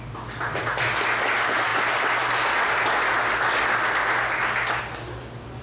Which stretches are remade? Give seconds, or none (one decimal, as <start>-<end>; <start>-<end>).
none